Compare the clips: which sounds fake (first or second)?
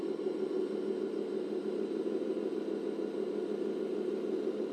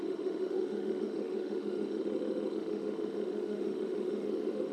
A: second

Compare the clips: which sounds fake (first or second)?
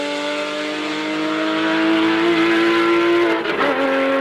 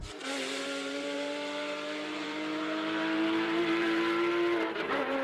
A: second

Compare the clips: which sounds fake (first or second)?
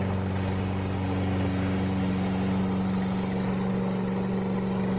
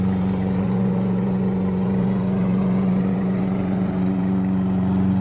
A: second